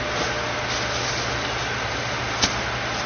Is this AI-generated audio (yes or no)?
no